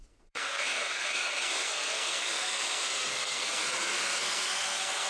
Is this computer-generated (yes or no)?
yes